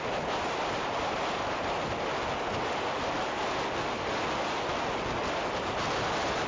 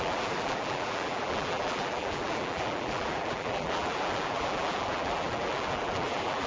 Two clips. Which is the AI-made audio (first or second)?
second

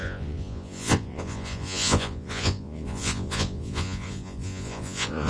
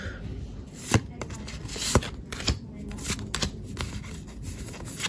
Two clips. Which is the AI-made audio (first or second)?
first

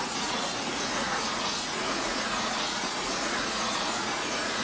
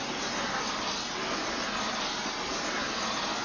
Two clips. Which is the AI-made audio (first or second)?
first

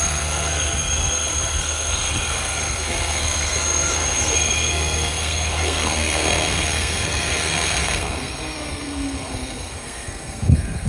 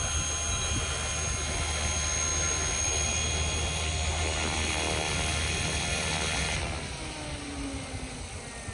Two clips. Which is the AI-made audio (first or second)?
first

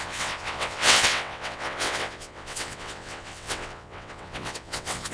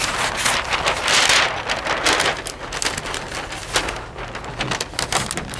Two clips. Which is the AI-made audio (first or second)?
first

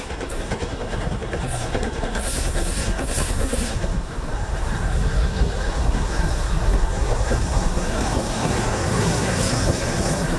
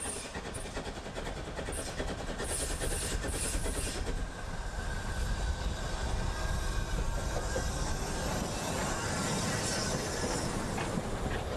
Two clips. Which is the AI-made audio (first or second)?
first